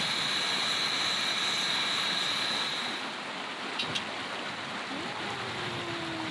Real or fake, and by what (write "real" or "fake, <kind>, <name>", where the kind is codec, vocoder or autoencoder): real